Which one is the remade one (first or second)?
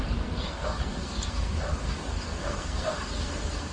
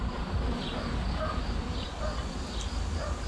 first